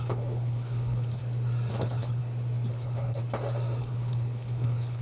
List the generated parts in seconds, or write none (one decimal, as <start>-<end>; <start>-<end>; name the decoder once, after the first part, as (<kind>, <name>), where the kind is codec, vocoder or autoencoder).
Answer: 0.0-1.2 (codec, HILCodec); 1.7-2.2; 2.7-3.2; 3.8-5.0